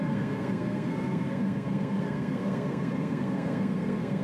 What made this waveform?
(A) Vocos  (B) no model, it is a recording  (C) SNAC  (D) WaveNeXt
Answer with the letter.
C